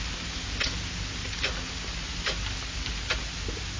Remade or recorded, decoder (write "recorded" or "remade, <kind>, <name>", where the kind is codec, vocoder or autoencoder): recorded